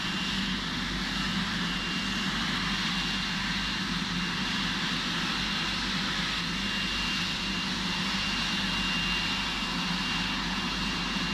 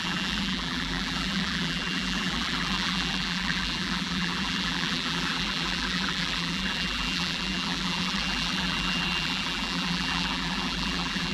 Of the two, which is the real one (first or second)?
first